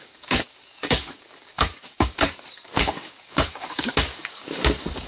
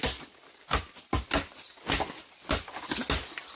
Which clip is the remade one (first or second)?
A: first